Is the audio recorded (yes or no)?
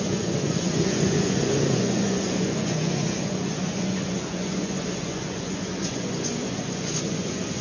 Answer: no